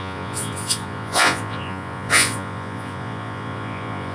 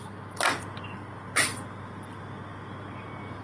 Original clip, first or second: second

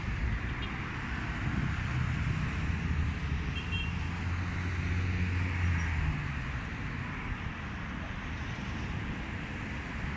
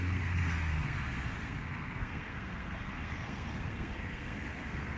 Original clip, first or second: first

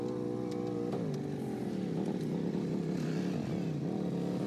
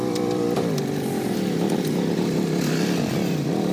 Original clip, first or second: first